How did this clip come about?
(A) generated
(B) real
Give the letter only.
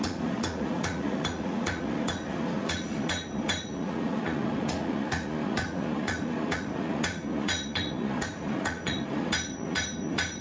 A